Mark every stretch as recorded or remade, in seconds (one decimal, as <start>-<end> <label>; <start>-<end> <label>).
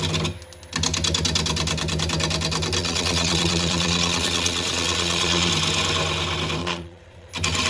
0.0-2.8 recorded; 2.8-5.5 remade; 5.5-6.6 recorded; 6.6-7.3 remade; 7.3-7.7 recorded